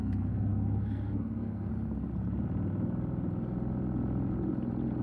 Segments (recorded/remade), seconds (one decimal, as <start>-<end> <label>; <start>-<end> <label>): 0.0-1.7 remade; 1.7-5.0 recorded